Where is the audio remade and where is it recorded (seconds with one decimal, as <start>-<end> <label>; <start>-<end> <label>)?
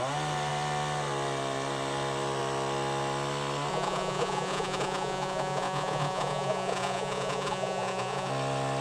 0.0-3.7 recorded; 3.7-8.3 remade; 8.3-8.8 recorded